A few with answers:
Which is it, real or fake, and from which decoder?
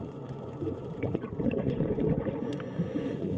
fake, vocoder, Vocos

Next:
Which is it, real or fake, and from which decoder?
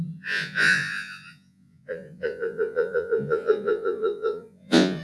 fake, vocoder, Vocos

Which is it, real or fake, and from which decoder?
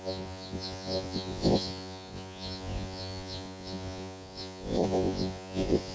fake, vocoder, Vocos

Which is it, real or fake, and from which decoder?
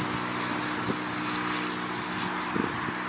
real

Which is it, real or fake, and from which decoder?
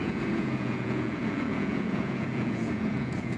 fake, vocoder, Vocos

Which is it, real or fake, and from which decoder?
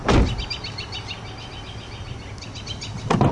real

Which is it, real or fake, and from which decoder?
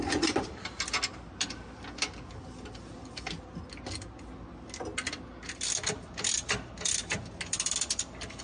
real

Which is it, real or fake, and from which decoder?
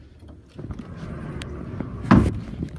real